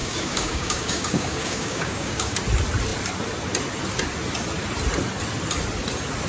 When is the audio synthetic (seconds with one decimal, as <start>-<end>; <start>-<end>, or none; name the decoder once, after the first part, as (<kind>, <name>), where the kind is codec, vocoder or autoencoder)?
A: 0.0-2.4 (codec, DAC)